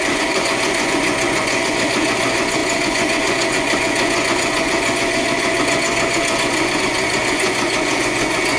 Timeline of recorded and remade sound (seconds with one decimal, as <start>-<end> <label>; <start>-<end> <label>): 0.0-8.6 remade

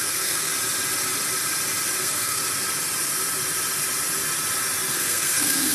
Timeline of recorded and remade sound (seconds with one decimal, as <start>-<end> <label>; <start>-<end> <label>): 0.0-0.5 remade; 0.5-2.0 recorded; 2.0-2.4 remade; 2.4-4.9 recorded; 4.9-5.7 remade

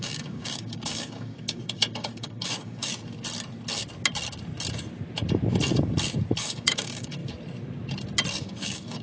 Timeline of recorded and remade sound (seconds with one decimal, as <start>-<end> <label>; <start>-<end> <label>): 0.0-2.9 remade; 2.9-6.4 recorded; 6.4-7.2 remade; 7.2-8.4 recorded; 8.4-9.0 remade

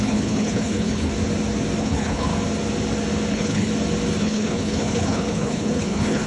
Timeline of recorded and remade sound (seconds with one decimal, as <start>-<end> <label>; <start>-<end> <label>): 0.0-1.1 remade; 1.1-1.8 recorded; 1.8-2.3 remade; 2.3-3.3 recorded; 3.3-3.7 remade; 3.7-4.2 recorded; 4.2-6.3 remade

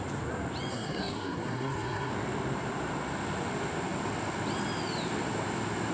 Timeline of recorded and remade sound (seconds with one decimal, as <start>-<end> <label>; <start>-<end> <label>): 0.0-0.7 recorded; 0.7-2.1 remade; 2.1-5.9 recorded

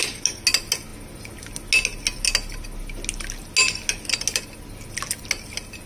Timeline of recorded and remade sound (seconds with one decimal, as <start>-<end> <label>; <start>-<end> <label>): 0.0-5.9 recorded

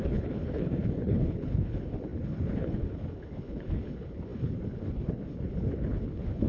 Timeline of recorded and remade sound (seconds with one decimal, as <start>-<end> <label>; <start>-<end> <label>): 0.0-6.5 remade

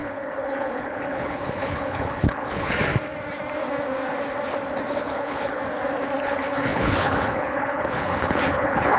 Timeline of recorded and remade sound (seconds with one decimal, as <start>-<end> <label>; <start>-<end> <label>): 0.0-2.9 remade; 2.9-4.9 recorded; 4.9-5.6 remade; 5.6-6.2 recorded; 6.2-9.0 remade